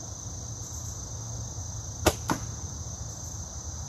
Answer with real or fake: real